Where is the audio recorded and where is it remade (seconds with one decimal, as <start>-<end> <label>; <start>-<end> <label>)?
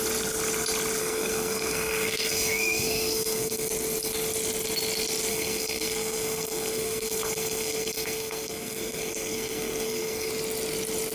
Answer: 0.0-1.0 recorded; 1.0-3.7 remade; 3.7-5.3 recorded; 5.3-10.3 remade; 10.3-11.1 recorded